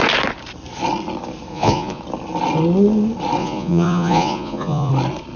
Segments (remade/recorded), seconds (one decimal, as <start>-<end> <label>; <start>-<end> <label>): 0.0-1.5 recorded; 1.5-2.0 remade; 2.0-3.4 recorded; 3.4-4.9 remade; 4.9-5.4 recorded